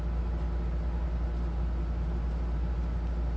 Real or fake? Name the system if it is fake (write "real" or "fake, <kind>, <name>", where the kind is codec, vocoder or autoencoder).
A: real